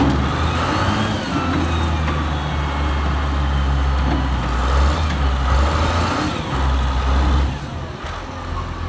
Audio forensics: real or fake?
real